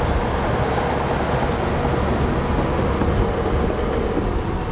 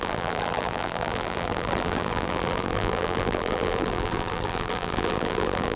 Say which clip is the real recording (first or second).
first